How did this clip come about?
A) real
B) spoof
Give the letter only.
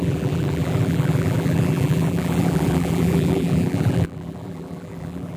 B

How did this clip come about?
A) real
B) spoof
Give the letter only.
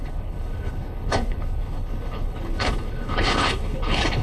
B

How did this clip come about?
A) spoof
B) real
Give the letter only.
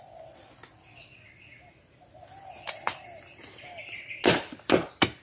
B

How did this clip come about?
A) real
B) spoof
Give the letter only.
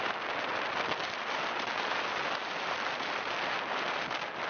A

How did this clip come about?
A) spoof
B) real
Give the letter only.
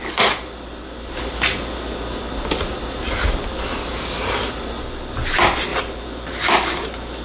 B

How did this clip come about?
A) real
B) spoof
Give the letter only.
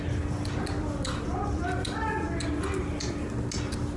A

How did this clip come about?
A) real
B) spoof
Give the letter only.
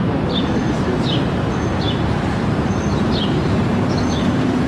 B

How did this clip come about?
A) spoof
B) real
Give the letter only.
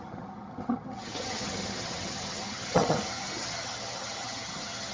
A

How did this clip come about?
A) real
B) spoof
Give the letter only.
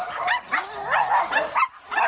A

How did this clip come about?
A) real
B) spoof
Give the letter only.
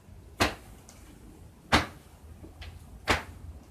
A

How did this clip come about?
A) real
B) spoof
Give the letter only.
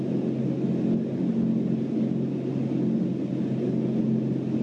A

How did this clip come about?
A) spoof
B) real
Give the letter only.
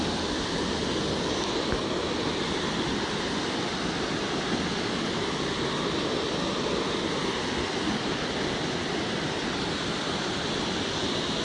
B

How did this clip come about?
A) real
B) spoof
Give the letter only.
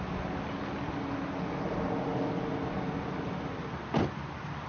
A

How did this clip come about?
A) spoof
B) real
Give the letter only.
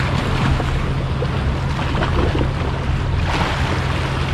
B